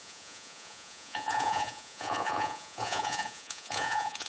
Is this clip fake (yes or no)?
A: yes